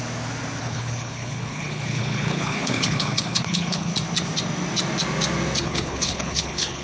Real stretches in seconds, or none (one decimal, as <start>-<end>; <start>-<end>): 0.0-0.6; 3.9-5.6